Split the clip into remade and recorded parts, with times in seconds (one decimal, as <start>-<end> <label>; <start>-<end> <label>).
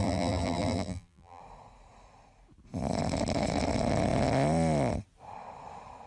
0.0-1.4 remade; 1.4-6.1 recorded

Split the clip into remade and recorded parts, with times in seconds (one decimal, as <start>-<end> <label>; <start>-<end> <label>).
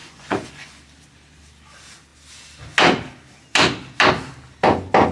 0.0-0.8 remade; 0.8-5.1 recorded